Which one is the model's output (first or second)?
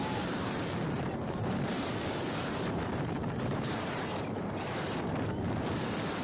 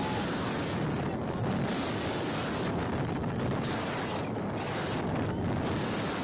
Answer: first